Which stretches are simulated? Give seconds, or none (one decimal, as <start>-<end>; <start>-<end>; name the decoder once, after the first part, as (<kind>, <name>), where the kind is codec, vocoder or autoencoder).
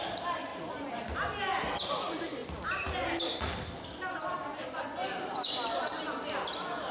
none